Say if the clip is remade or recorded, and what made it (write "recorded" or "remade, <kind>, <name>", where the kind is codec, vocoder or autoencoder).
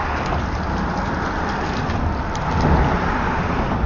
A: recorded